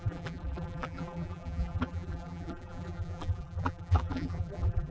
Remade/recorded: remade